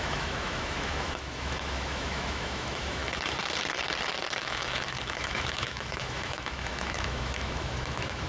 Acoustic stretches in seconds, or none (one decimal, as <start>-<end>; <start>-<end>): 3.0-4.4